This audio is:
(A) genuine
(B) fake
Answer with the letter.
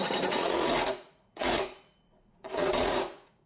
B